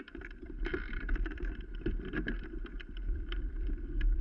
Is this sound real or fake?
fake